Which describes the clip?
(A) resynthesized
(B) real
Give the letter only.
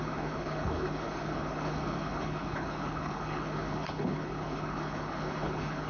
A